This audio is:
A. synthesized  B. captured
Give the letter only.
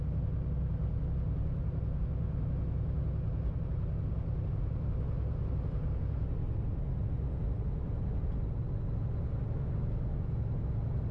B